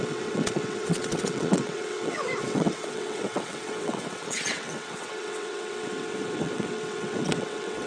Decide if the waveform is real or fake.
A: fake